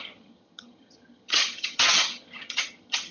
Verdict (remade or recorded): remade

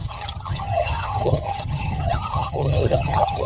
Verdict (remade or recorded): remade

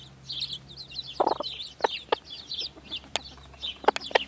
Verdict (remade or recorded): recorded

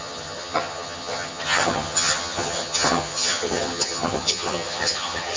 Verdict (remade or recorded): remade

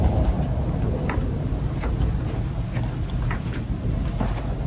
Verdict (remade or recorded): recorded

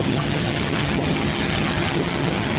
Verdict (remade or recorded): remade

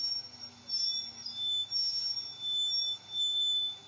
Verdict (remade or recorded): recorded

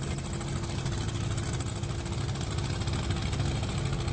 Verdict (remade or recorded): recorded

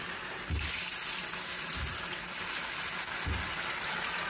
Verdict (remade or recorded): recorded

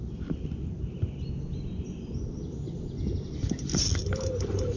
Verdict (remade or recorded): recorded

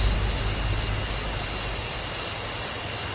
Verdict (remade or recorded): recorded